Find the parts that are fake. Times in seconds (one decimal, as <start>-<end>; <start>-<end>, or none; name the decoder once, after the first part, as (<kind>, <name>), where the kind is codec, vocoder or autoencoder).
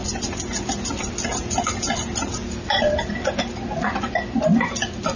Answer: none